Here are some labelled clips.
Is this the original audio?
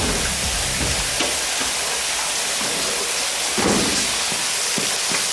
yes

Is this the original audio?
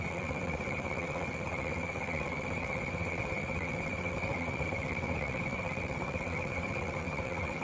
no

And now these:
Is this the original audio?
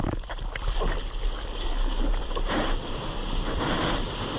yes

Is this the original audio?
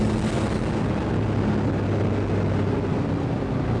yes